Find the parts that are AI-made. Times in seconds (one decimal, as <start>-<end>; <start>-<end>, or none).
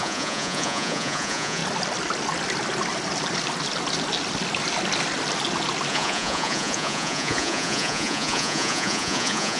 0.0-1.6; 5.9-9.6